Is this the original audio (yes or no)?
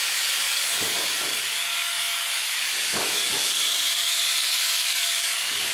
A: no